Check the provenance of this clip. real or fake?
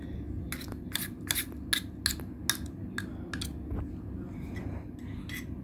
real